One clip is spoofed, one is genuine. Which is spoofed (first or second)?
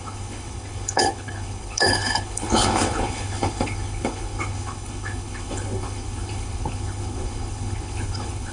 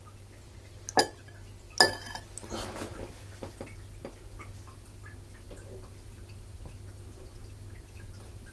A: first